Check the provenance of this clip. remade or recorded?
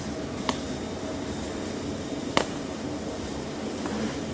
recorded